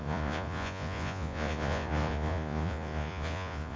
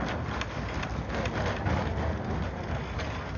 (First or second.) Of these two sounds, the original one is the second